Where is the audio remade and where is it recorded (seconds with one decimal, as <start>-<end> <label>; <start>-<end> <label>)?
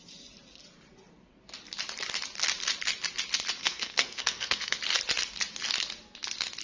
0.0-3.6 recorded; 3.6-4.8 remade; 4.8-6.6 recorded